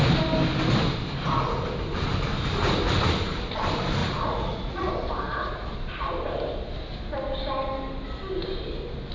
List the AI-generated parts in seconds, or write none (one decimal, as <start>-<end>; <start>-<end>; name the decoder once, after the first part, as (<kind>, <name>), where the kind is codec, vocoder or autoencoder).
4.0-4.9 (vocoder, Vocos)